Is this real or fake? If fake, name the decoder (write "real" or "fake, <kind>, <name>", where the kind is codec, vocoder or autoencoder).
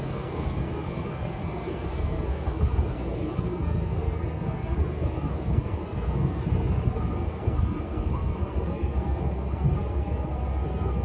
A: fake, codec, SNAC